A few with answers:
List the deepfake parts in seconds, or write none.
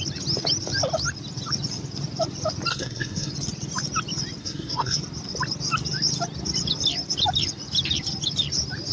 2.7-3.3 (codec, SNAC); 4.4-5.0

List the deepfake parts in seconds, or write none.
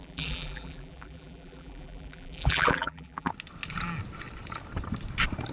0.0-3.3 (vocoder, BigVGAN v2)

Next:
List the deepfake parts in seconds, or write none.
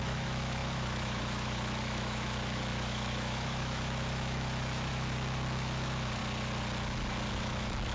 0.0-6.2 (autoencoder, DAC-VAE); 7.3-7.9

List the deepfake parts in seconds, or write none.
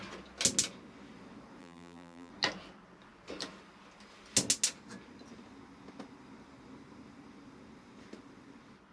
1.6-2.3 (vocoder, BigVGAN v2)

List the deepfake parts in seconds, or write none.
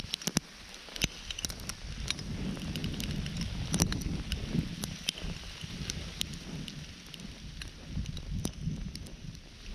none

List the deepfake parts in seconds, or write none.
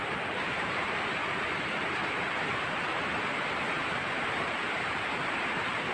0.0-1.2 (vocoder, BigVGAN v2); 4.5-5.9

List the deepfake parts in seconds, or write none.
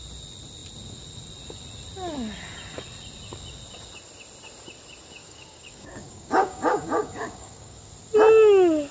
5.2-7.9 (codec, DAC)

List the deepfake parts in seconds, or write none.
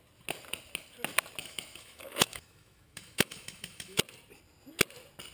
1.4-4.0 (autoencoder, DAC-VAE)